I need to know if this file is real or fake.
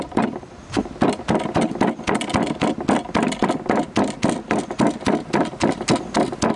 real